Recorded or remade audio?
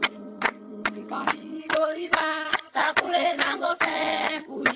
remade